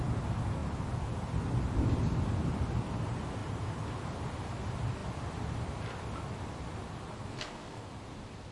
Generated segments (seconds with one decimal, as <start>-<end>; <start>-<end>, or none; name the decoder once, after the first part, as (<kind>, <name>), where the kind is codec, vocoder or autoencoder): 7.3-7.8 (codec, SNAC)